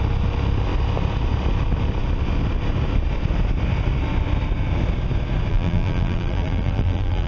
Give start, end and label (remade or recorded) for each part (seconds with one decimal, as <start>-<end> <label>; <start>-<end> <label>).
0.0-5.5 recorded; 5.5-7.3 remade